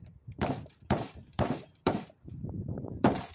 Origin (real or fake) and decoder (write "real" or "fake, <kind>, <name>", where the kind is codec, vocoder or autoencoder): fake, vocoder, BigVGAN v2